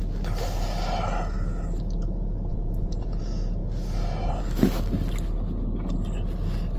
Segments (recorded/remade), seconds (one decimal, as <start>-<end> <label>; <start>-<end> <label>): 0.0-2.5 recorded; 2.5-3.2 remade; 3.2-6.8 recorded